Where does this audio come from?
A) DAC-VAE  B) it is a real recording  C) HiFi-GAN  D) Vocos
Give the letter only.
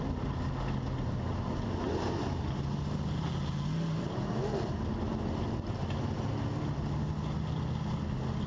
B